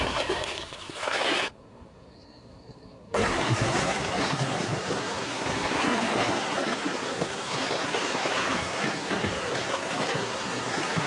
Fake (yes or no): yes